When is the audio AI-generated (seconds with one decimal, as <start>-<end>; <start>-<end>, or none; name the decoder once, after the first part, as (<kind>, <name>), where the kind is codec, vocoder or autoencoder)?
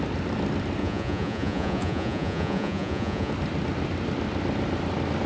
0.8-3.3 (vocoder, Vocos)